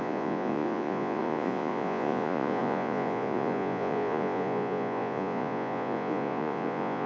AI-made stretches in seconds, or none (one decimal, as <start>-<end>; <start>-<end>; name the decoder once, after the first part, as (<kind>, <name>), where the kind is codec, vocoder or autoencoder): 0.0-7.1 (vocoder, Vocos)